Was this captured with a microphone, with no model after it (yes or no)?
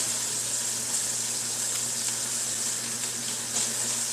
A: yes